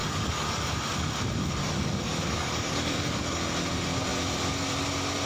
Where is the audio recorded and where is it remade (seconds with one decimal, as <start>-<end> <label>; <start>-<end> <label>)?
0.0-0.6 remade; 0.6-1.6 recorded; 1.6-3.4 remade; 3.4-5.3 recorded